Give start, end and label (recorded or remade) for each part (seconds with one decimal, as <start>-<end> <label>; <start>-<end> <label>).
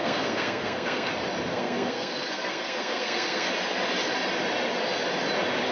0.0-1.1 remade; 1.1-1.5 recorded; 1.5-3.5 remade; 3.5-5.7 recorded